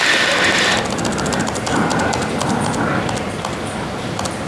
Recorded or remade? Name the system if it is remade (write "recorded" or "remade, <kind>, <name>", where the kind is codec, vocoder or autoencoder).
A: recorded